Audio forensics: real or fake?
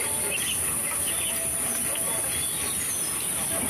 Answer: real